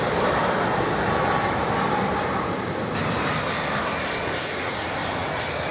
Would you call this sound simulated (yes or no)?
no